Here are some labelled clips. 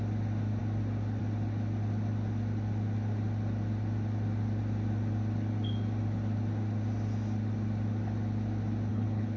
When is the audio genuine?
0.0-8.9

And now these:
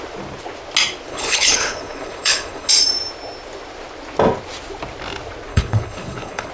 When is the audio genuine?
0.0-1.1; 2.7-5.5

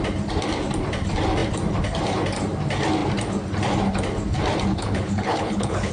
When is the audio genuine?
0.0-4.7